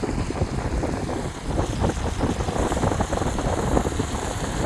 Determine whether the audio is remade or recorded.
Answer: recorded